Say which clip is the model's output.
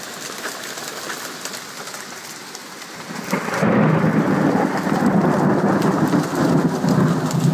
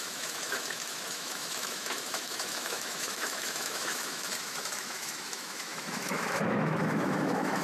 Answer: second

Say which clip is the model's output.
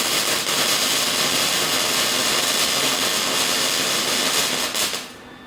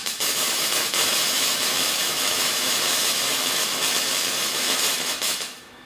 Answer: second